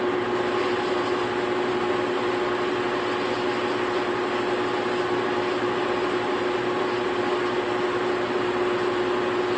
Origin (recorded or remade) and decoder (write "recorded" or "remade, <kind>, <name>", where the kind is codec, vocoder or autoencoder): recorded